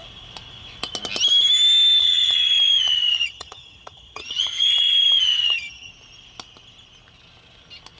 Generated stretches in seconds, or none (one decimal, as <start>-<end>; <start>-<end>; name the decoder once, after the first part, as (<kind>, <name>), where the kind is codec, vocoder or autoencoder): 2.0-5.9 (vocoder, HiFi-GAN)